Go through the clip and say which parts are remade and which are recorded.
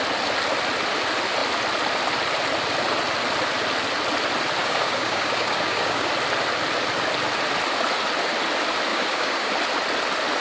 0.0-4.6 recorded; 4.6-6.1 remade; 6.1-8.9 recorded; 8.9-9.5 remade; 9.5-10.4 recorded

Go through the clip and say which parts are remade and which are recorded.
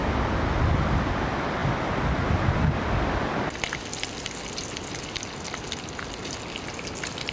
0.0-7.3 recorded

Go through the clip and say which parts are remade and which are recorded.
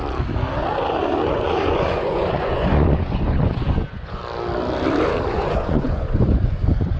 0.0-1.3 recorded; 1.3-4.2 remade; 4.2-5.3 recorded; 5.3-7.0 remade